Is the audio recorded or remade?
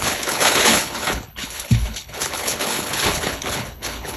remade